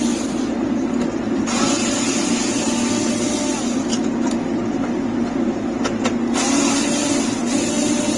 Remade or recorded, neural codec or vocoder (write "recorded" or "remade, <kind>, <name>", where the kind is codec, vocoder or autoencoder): recorded